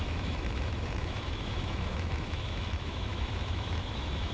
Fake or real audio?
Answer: fake